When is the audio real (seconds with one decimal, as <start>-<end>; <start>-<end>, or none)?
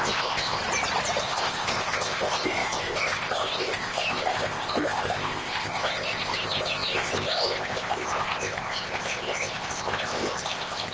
0.6-1.2